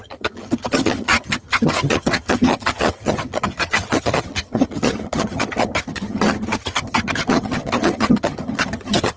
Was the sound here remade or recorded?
remade